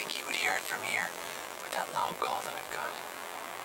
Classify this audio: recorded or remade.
remade